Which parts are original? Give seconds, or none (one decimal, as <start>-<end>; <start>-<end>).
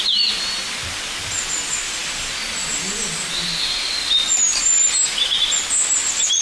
0.0-6.4